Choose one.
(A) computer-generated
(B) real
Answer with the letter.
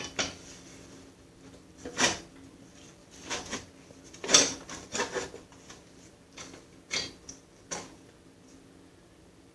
A